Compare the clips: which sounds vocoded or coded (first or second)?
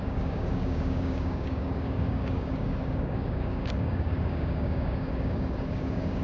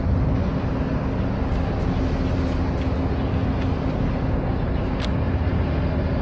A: first